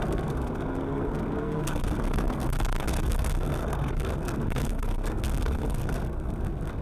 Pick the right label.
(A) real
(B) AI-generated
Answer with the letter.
B